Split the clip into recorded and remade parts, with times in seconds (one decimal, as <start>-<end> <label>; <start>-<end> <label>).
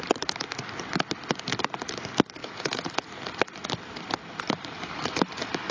0.0-2.4 recorded; 2.4-2.9 remade; 2.9-5.7 recorded